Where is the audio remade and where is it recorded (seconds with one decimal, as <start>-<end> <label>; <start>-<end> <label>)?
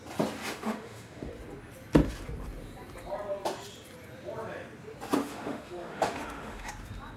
0.0-0.5 recorded; 0.5-1.3 remade; 1.3-5.2 recorded; 5.2-6.7 remade; 6.7-7.2 recorded